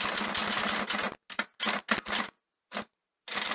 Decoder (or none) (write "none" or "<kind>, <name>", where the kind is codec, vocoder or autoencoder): none